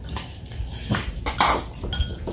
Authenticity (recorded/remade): recorded